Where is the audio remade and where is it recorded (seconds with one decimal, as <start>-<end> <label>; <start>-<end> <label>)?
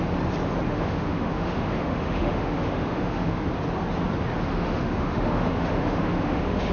0.0-0.7 recorded; 0.7-3.3 remade; 3.3-4.5 recorded; 4.5-6.7 remade